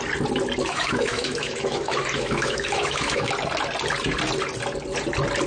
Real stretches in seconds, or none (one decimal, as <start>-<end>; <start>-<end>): 0.0-0.6; 3.3-5.5

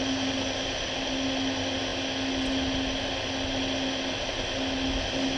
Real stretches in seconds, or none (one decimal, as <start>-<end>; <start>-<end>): 0.0-5.4